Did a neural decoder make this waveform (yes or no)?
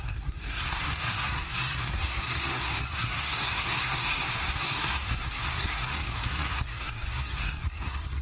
yes